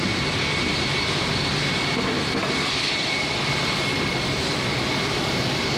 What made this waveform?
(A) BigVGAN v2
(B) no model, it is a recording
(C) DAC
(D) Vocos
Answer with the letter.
A